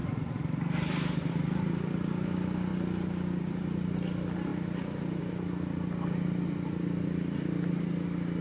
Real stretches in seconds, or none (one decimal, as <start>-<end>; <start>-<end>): 0.0-8.4